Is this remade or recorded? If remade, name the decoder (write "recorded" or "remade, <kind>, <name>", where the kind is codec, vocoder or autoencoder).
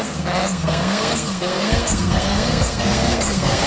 remade, codec, SNAC